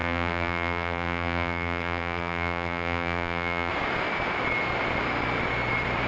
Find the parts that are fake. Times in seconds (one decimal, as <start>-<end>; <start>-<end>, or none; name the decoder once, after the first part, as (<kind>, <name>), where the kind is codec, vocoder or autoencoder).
0.0-3.7 (vocoder, BigVGAN v2)